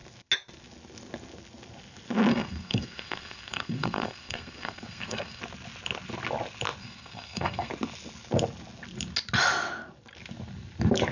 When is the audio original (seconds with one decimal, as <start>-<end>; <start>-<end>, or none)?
0.0-2.3; 5.4-6.8; 7.7-11.1